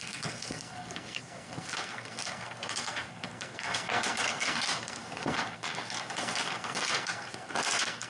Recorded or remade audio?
remade